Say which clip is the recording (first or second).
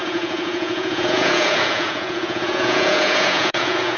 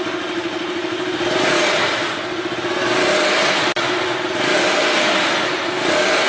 second